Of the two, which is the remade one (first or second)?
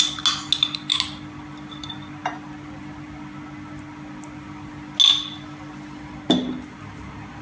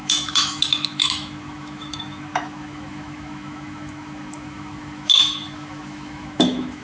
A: second